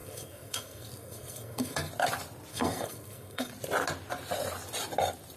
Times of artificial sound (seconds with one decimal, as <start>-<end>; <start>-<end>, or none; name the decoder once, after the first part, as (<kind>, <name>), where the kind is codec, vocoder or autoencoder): 0.0-1.9 (codec, SNAC); 2.5-3.5